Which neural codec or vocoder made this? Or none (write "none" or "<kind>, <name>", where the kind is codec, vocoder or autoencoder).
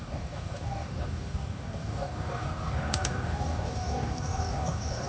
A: codec, DAC